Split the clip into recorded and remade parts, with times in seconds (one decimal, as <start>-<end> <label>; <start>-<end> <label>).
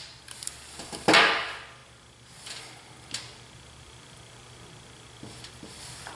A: 0.0-6.2 recorded